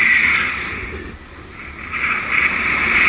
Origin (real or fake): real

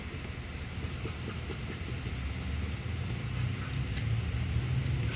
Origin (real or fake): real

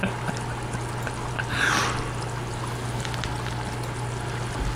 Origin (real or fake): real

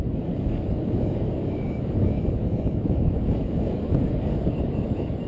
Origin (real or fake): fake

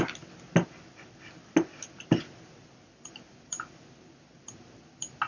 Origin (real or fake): real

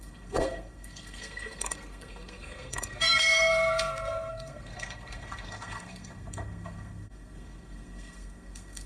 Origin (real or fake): fake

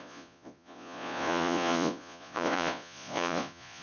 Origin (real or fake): fake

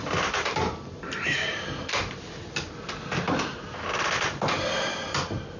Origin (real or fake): real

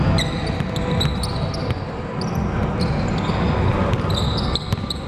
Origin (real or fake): real